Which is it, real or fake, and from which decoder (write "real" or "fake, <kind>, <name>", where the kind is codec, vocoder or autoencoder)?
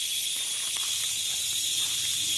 real